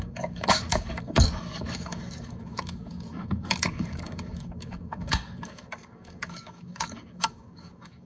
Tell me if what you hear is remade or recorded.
remade